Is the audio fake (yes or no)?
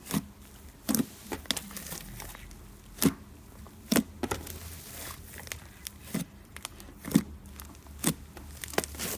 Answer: no